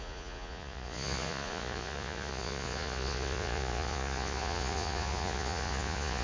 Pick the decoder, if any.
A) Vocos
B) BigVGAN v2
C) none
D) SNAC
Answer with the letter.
A